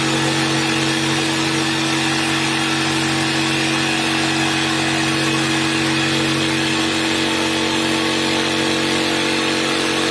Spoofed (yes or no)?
no